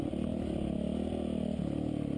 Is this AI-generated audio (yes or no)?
no